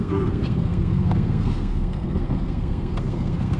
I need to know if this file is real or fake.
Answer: fake